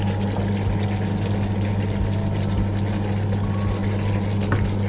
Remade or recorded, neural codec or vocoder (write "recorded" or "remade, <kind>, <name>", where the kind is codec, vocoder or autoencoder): recorded